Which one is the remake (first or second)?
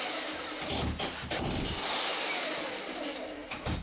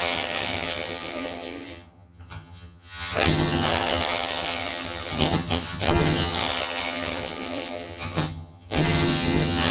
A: second